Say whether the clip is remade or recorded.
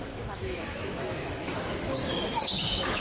remade